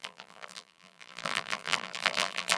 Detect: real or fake fake